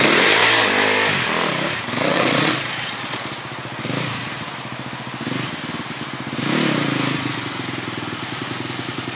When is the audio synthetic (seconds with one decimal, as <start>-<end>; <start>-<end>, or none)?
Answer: 2.1-3.2